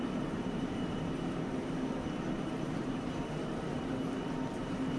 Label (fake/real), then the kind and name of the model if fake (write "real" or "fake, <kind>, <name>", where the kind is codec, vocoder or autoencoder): fake, vocoder, BigVGAN v2